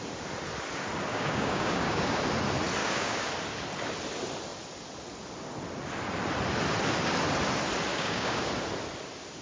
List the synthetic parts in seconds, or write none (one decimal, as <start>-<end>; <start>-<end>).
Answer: 1.1-2.2; 2.8-3.3; 7.9-8.5